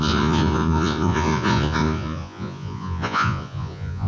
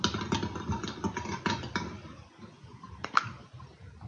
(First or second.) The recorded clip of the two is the second